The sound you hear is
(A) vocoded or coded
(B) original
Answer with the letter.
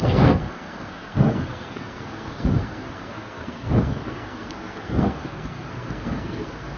A